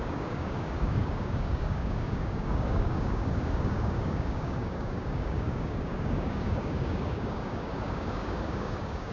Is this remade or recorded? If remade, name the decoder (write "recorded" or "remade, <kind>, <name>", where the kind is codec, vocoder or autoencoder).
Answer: remade, codec, DAC